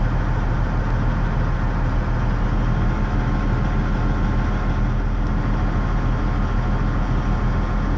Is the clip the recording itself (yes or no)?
yes